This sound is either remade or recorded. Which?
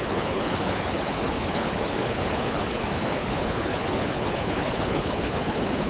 remade